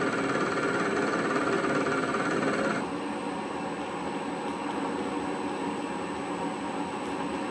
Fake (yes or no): no